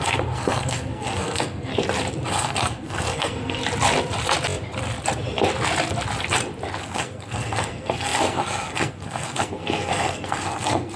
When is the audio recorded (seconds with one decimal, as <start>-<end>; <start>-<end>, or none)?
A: 1.7-2.3; 3.6-6.8